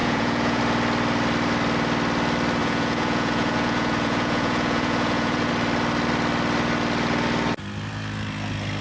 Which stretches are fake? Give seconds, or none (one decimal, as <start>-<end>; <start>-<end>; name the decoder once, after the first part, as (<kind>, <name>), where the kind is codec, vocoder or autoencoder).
0.0-0.6 (vocoder, Vocos); 2.6-5.5